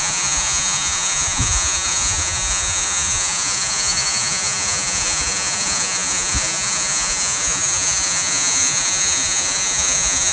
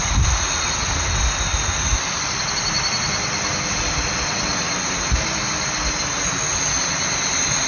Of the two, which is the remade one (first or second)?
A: first